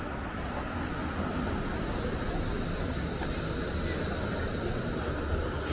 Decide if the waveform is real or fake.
real